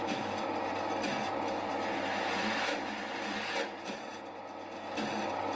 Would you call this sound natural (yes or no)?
yes